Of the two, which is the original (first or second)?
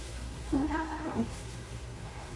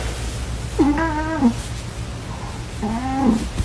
second